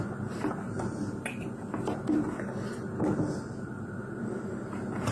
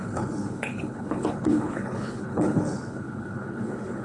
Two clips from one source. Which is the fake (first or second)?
second